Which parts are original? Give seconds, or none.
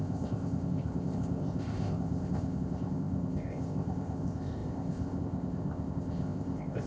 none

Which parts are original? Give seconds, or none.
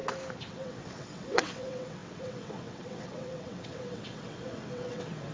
0.0-0.5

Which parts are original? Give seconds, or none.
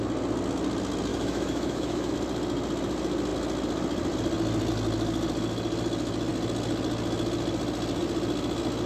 0.0-1.1; 2.1-8.9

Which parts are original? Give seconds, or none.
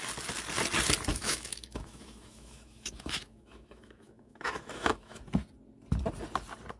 0.0-1.1; 5.2-6.8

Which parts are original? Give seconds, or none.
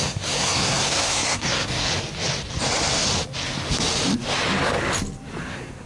1.9-5.4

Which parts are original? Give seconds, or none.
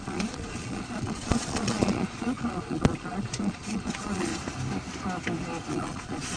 4.3-5.7